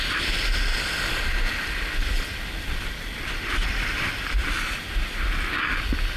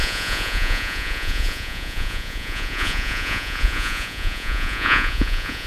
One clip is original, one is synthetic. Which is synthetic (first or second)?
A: second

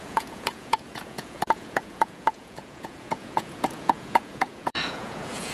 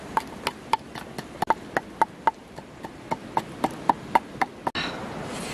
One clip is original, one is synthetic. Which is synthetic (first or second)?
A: first